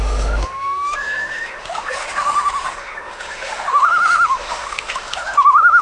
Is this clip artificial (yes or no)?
yes